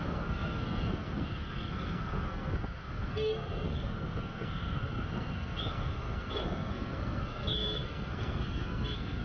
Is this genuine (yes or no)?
no